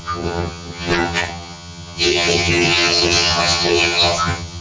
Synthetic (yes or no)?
yes